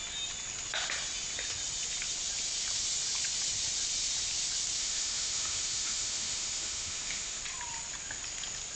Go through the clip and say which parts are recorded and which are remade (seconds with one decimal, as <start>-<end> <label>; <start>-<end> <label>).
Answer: 0.0-4.8 recorded; 4.8-7.4 remade; 7.4-8.8 recorded